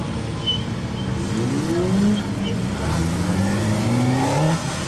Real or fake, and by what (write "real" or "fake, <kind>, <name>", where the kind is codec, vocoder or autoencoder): real